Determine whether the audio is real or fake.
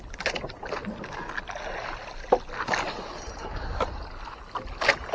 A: real